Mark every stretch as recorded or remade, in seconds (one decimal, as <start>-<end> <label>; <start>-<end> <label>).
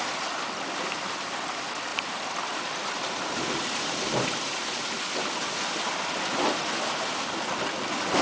0.0-1.9 recorded; 1.9-5.1 remade; 5.1-8.2 recorded